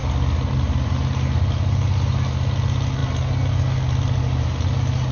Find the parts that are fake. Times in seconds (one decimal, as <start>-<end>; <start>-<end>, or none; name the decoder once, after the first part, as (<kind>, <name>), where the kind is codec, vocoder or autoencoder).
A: none

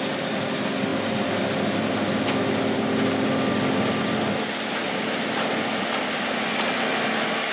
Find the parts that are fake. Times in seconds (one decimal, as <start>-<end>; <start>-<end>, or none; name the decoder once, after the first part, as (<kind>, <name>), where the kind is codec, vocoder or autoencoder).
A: none